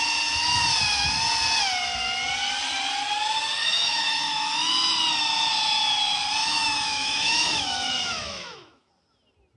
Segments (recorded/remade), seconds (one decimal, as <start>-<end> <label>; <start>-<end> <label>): 0.0-3.6 recorded; 3.6-4.7 remade; 4.7-6.4 recorded; 6.4-8.9 remade; 8.9-9.6 recorded